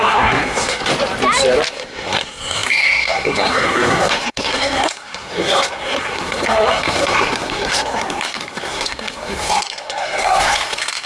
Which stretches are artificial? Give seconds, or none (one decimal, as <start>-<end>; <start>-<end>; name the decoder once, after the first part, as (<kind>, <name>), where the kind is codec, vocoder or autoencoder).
0.0-0.9 (codec, SNAC); 1.7-11.1